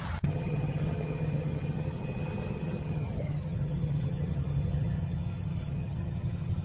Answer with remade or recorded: remade